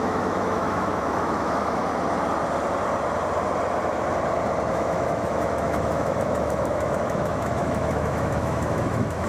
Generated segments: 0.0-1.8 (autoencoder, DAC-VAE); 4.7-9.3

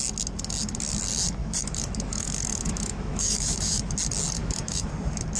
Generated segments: 1.4-3.9 (autoencoder, DAC-VAE); 4.4-4.9

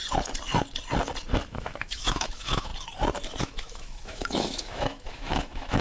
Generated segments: 1.5-2.7 (autoencoder, DAC-VAE); 3.4-5.8

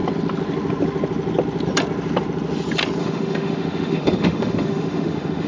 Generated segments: 3.0-5.5 (autoencoder, DAC-VAE)

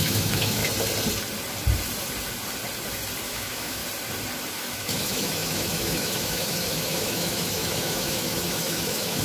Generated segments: 0.0-0.6 (autoencoder, DAC-VAE); 3.2-3.8; 4.5-9.2

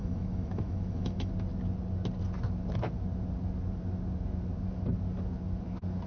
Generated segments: 0.0-1.3 (autoencoder, DAC-VAE)

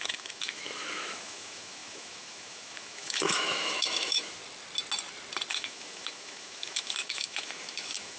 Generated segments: 0.0-4.4 (autoencoder, DAC-VAE); 5.5-8.2